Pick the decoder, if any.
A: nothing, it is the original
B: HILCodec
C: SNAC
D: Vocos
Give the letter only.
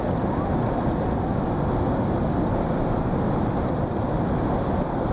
A